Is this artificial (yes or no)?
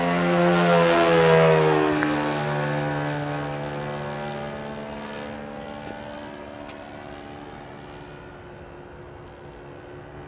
no